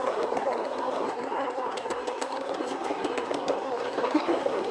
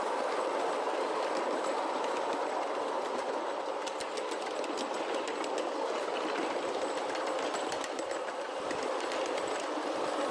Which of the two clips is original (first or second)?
second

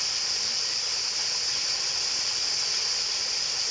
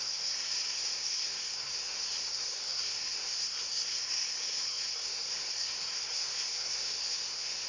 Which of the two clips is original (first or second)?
first